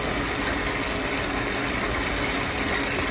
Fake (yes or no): no